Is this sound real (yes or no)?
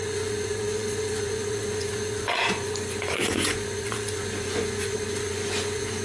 no